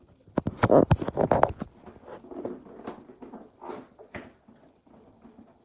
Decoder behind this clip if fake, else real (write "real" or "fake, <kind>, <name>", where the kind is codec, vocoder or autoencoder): real